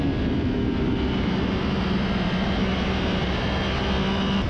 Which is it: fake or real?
real